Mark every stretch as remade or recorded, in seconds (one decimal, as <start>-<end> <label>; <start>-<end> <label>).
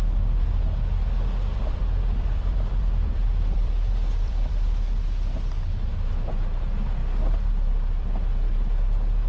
0.0-1.5 recorded; 1.5-4.8 remade; 4.8-9.3 recorded